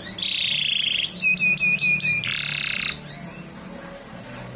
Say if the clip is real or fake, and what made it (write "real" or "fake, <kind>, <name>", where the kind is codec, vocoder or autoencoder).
real